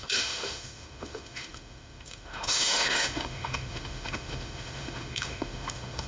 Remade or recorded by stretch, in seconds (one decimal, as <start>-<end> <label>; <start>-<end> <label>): 0.0-6.1 remade